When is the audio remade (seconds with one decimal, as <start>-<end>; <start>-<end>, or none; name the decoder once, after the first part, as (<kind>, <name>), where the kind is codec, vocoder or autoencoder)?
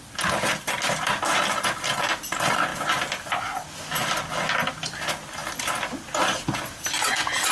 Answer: none